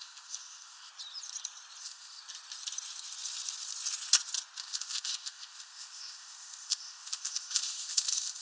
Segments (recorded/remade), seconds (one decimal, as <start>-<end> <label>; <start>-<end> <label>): 0.0-0.9 remade; 0.9-1.8 recorded; 1.8-2.2 remade; 2.2-4.6 recorded; 4.6-8.4 remade